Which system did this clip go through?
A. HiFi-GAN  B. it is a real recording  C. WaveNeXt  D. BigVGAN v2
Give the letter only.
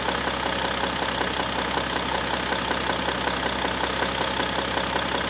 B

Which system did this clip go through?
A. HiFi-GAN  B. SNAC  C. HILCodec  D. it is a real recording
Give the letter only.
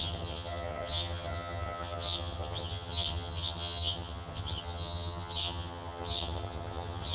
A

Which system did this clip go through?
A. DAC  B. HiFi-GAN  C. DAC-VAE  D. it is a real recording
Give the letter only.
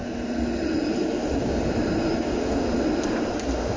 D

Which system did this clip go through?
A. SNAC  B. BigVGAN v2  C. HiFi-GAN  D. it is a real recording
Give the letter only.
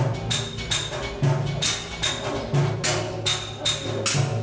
D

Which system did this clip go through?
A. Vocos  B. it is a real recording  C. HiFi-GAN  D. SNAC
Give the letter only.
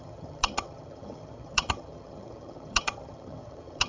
C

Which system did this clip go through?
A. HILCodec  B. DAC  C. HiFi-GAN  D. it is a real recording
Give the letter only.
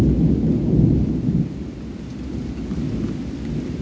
D